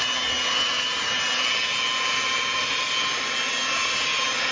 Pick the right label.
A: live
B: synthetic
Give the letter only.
A